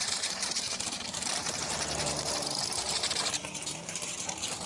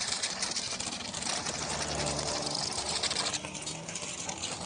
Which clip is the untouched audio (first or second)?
second